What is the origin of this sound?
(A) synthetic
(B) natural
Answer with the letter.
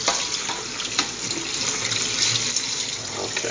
B